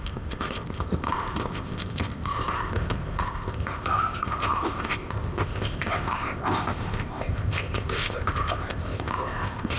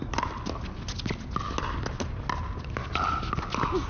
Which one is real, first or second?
second